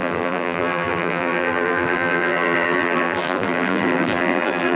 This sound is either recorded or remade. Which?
remade